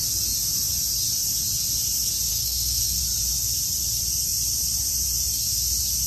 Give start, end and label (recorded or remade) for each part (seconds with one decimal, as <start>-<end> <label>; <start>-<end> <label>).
0.0-2.3 recorded; 2.3-3.0 remade; 3.0-6.1 recorded